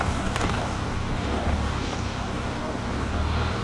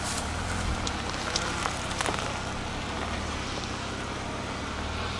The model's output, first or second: first